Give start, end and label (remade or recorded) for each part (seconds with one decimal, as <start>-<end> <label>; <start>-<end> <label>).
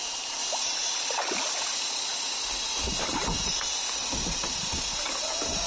0.0-5.7 recorded